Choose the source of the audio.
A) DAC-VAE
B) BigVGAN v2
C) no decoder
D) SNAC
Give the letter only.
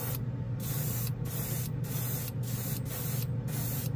C